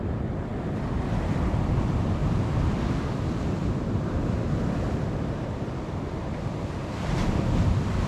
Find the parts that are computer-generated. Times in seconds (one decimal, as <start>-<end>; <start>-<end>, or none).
none